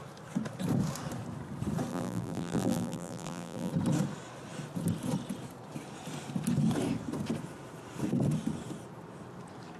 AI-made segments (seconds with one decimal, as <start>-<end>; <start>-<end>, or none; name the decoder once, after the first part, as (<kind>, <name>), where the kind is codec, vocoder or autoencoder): 1.9-3.7 (vocoder, BigVGAN v2)

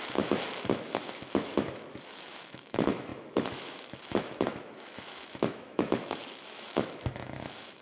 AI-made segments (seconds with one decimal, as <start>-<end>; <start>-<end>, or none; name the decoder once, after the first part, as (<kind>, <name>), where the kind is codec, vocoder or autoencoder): 0.0-7.8 (autoencoder, DAC-VAE)

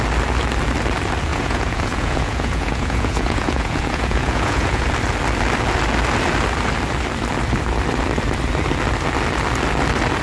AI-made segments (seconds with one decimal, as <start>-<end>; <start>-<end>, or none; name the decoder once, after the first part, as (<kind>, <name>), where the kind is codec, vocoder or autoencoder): 1.3-4.9 (vocoder, Vocos)

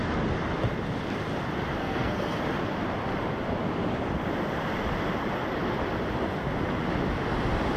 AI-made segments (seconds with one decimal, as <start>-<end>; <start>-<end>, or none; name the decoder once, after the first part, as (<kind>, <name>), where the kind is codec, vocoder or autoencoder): 1.8-2.4 (codec, SNAC)

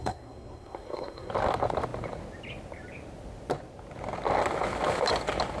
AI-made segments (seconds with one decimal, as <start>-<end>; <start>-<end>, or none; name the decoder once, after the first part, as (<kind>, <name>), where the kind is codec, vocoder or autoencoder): 0.0-1.3 (codec, SNAC)

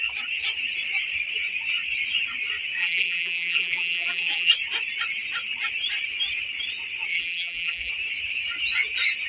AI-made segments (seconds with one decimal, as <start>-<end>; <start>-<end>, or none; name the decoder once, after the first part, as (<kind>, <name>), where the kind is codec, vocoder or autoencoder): 2.8-4.5 (vocoder, BigVGAN v2); 7.1-7.9

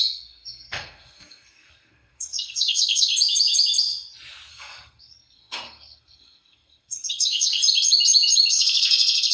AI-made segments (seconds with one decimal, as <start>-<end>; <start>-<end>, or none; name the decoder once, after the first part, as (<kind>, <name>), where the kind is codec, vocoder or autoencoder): 0.0-3.1 (codec, SNAC); 4.5-7.6; 8.5-9.3